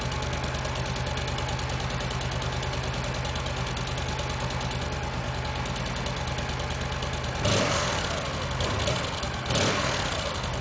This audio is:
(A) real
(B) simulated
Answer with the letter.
A